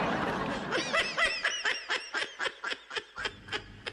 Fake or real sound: real